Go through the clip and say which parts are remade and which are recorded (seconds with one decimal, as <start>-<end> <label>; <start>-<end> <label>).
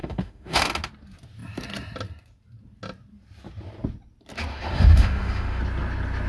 0.0-0.7 remade; 0.7-4.5 recorded; 4.5-5.6 remade; 5.6-6.3 recorded